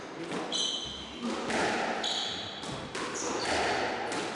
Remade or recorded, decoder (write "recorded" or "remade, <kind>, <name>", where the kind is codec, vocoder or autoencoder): recorded